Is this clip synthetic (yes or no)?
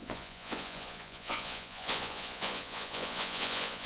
yes